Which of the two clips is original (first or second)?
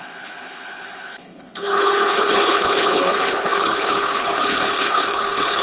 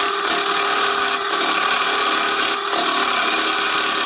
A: second